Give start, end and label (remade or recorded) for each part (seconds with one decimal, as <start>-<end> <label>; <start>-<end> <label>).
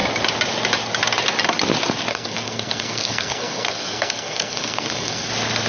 0.0-2.1 recorded; 2.1-5.3 remade; 5.3-5.7 recorded